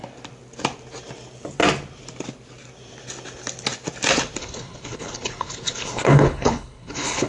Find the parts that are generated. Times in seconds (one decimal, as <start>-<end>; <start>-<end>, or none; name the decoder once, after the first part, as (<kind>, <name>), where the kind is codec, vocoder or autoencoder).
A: 4.4-7.3 (codec, HILCodec)